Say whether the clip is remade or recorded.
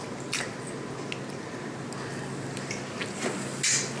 recorded